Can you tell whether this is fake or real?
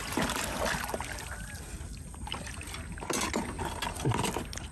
real